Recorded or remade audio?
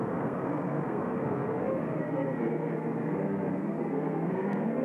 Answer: remade